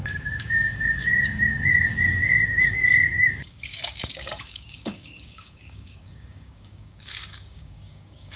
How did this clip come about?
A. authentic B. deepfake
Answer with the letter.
B